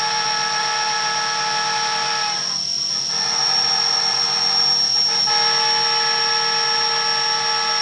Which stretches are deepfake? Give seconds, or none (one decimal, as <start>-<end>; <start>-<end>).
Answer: none